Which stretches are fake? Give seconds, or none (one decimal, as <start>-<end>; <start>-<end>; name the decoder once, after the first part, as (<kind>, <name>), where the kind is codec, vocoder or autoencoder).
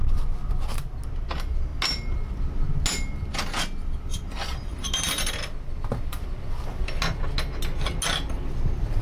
none